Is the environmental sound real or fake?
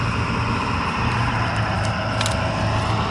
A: real